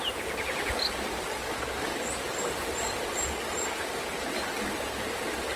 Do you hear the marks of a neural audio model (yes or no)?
no